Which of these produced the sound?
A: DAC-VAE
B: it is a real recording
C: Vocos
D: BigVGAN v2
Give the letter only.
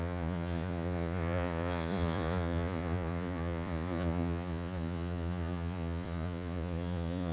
C